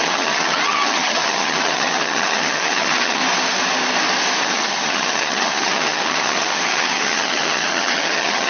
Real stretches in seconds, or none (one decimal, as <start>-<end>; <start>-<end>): 3.2-4.4